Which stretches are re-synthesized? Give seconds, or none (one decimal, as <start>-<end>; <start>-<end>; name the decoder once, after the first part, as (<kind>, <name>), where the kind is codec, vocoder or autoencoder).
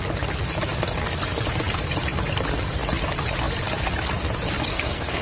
4.7-5.2 (codec, SNAC)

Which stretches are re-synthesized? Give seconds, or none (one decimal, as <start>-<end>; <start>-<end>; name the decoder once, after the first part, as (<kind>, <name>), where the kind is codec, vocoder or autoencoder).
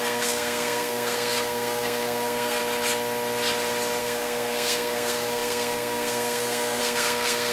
0.0-2.6 (codec, SNAC); 4.0-7.5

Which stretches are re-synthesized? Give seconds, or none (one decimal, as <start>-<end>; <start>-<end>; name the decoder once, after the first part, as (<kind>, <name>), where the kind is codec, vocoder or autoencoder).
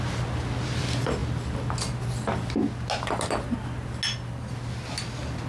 none